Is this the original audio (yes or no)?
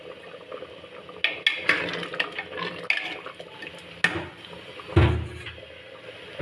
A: yes